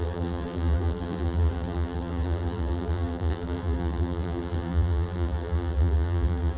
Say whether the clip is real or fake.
fake